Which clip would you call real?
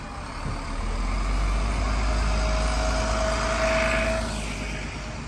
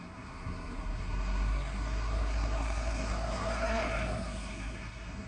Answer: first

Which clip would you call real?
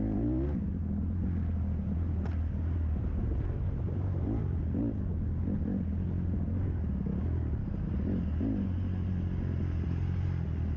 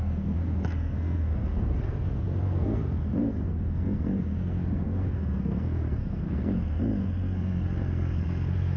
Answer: first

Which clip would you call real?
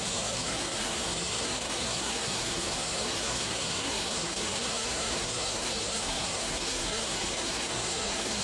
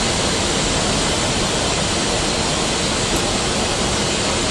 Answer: second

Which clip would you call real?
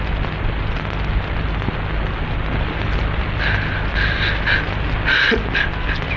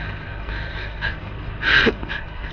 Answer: first